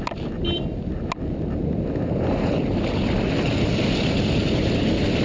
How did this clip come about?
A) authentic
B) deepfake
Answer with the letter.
A